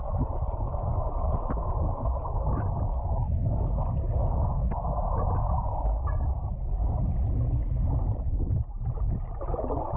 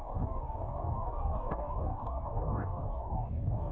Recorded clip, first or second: first